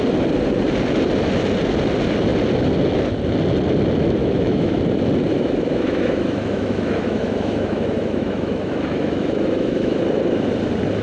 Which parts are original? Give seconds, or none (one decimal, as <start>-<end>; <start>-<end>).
0.0-4.2; 4.8-5.3; 10.0-11.0